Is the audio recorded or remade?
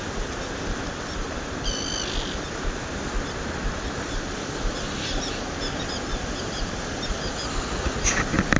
recorded